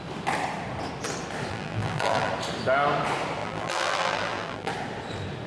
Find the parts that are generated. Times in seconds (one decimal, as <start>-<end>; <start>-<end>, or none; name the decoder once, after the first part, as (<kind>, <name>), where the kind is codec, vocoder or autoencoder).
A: 1.5-2.3 (vocoder, BigVGAN v2); 3.4-4.7